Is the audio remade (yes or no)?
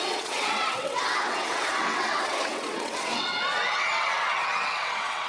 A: yes